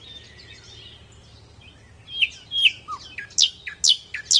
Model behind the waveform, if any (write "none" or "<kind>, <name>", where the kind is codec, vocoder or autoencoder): none